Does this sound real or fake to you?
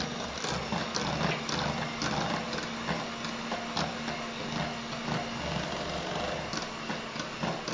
real